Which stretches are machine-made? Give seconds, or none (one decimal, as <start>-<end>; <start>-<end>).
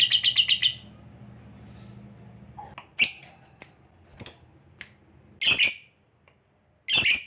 none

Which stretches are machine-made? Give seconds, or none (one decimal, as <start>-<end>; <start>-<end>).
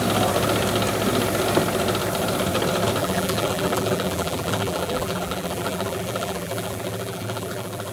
3.0-7.9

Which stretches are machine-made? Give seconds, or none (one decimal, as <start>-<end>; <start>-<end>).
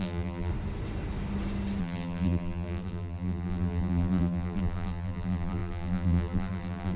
0.0-0.5; 1.8-7.0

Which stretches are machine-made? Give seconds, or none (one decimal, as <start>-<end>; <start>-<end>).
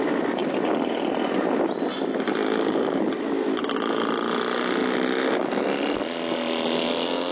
none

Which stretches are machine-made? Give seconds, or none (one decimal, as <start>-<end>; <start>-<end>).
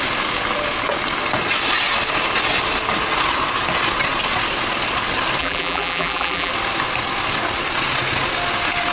5.4-6.5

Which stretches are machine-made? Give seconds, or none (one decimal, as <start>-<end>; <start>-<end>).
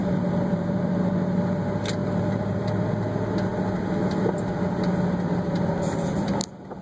0.0-1.1; 2.0-2.7